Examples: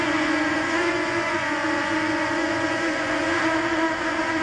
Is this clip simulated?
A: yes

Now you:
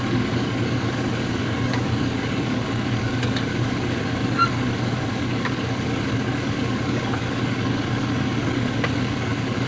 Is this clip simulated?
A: yes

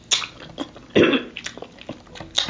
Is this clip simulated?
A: no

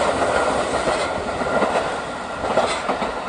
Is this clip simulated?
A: no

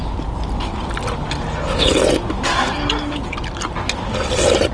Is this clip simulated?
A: no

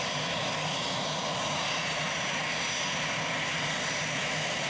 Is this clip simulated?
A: no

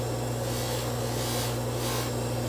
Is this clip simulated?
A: no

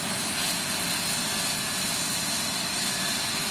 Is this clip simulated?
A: no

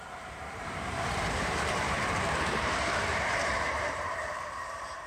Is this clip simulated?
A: yes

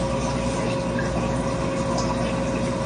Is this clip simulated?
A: no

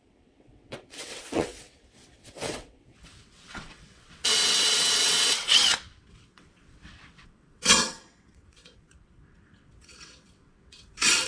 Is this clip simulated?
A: yes